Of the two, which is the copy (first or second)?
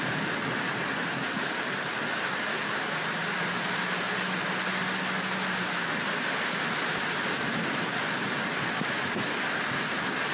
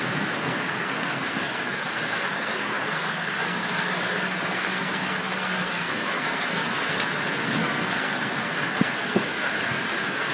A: second